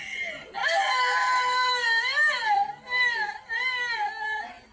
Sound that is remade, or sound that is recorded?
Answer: remade